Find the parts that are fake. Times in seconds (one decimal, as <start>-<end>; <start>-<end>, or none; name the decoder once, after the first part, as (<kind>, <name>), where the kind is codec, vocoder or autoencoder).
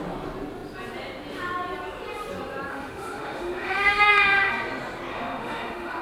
2.7-4.5 (autoencoder, DAC-VAE); 5.1-6.0